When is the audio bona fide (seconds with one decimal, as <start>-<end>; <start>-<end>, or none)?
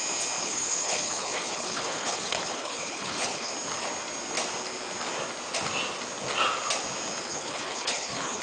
0.0-0.4; 3.5-7.2